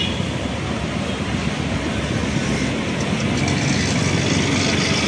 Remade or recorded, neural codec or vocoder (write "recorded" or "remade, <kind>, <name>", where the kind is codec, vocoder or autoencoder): recorded